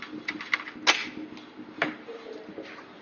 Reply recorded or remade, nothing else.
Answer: recorded